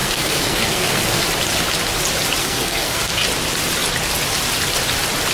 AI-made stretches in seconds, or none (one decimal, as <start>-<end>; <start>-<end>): 0.0-1.2; 2.4-3.1